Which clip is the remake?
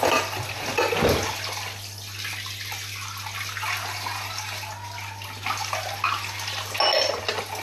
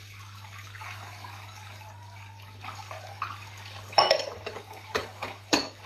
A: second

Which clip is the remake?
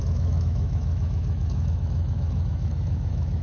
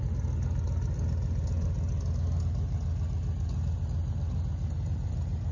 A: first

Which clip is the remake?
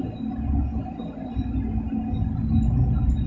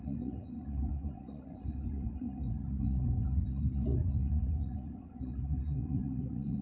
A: second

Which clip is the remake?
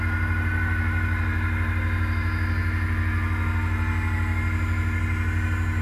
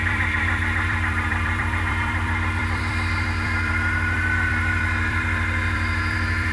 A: second